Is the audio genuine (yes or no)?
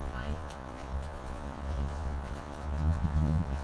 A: no